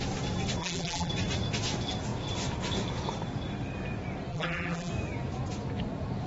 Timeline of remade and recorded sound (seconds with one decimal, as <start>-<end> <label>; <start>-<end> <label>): 0.0-0.6 recorded; 0.6-1.1 remade; 1.1-4.3 recorded; 4.3-4.9 remade; 4.9-6.3 recorded